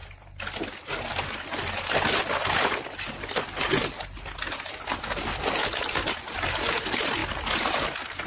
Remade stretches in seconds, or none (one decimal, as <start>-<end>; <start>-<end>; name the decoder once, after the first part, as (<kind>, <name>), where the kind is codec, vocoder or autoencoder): none